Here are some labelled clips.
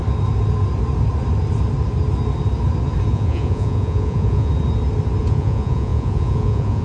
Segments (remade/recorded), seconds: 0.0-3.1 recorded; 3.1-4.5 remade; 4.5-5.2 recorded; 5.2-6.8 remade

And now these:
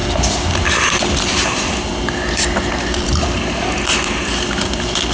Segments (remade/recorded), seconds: 0.0-5.1 recorded

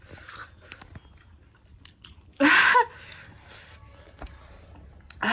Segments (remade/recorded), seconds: 0.0-5.3 recorded

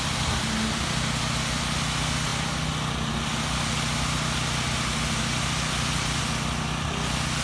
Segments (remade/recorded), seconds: 0.0-7.4 recorded

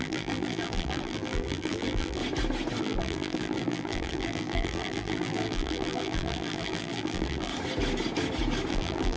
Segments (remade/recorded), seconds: 0.0-2.2 remade; 2.2-2.8 recorded; 2.8-7.5 remade; 7.5-8.7 recorded; 8.7-9.2 remade

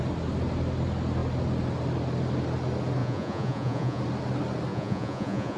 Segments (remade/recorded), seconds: 0.0-3.0 recorded; 3.0-4.0 remade; 4.0-4.7 recorded; 4.7-5.6 remade

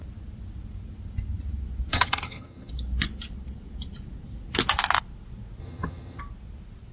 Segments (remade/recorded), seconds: 0.0-1.9 recorded; 1.9-2.7 remade; 2.7-5.6 recorded; 5.6-6.2 remade; 6.2-6.9 recorded

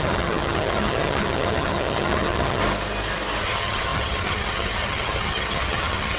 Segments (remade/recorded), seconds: 0.0-2.6 remade; 2.6-3.4 recorded; 3.4-6.2 remade